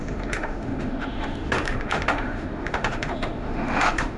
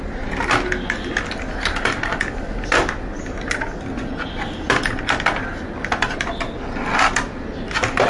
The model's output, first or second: first